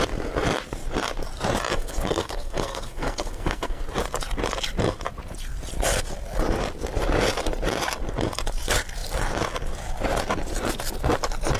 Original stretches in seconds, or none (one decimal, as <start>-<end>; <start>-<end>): 0.0-1.7; 3.8-11.6